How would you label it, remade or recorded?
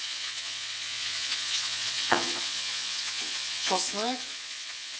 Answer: remade